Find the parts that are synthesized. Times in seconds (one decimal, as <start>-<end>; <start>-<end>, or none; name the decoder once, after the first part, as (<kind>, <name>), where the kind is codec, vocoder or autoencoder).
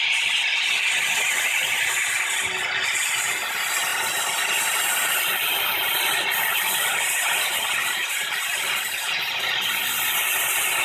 3.9-5.6 (vocoder, BigVGAN v2); 6.5-7.5